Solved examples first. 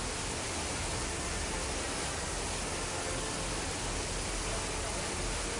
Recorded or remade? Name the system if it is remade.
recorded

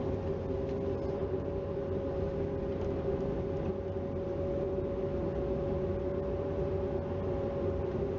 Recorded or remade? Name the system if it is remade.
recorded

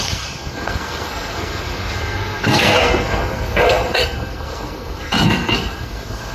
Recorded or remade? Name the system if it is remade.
remade, codec, SNAC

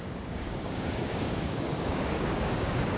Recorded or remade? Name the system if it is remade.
remade, codec, DAC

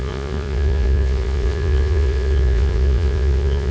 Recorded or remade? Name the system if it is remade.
remade, vocoder, Vocos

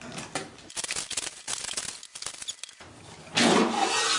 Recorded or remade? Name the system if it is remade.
recorded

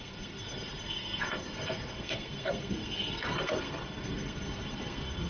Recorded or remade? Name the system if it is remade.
remade, codec, SNAC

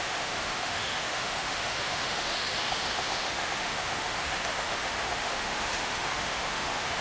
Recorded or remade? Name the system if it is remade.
remade, autoencoder, DAC-VAE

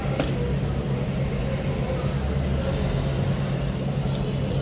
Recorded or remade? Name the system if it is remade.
recorded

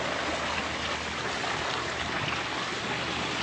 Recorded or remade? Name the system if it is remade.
recorded